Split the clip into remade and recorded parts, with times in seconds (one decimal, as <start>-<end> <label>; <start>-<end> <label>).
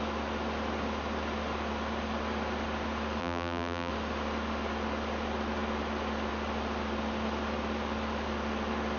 0.0-3.2 recorded; 3.2-3.9 remade; 3.9-9.0 recorded